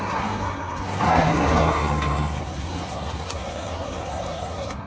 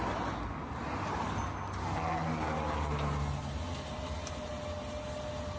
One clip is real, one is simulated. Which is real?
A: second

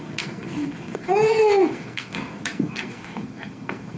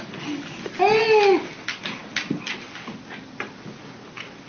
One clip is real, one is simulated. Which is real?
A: second